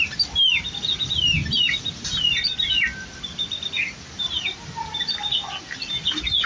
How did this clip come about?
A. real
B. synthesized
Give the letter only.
A